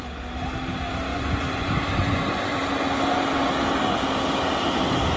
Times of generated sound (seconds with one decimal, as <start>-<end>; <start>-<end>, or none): 1.1-1.7; 2.1-2.6